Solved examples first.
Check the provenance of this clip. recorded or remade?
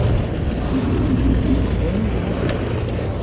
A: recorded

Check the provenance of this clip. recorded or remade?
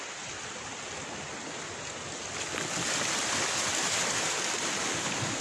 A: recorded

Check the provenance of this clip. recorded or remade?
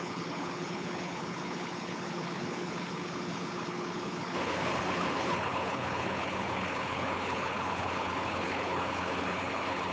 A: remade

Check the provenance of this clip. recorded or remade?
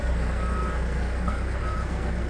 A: remade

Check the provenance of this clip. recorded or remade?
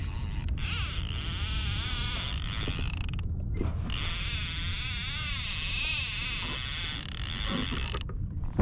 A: recorded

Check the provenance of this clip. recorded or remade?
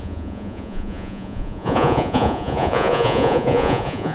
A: remade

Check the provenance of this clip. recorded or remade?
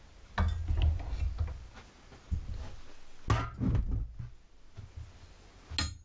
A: recorded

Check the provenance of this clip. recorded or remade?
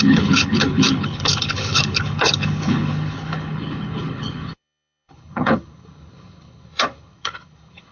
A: remade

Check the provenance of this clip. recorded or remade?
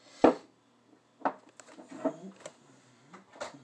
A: recorded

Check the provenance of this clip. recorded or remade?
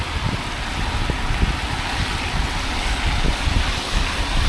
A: recorded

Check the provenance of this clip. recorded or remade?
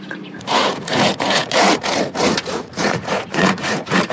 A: remade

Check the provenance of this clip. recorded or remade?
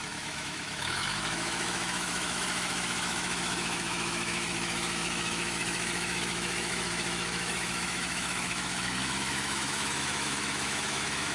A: remade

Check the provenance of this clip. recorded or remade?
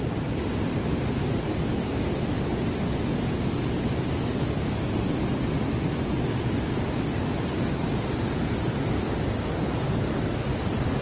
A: recorded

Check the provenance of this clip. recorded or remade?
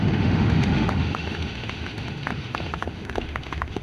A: remade